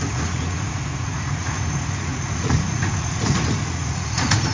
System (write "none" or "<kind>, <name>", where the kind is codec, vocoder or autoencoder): vocoder, Vocos